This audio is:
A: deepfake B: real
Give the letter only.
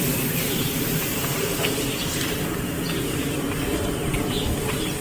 B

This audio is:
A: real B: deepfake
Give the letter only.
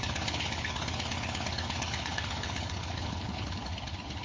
B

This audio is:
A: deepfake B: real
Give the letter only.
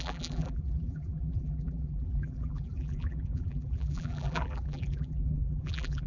A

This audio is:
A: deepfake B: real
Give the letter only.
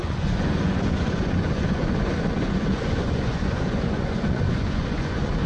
A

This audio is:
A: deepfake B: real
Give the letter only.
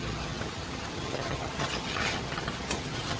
A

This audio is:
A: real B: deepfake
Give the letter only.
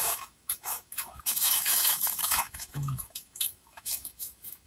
B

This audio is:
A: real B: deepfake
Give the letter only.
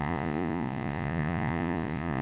B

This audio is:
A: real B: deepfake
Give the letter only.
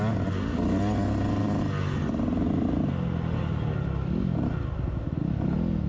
A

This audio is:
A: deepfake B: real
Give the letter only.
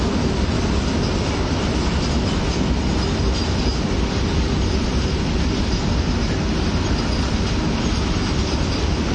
B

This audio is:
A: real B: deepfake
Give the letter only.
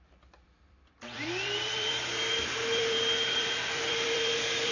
B